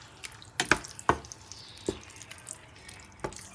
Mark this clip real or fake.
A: real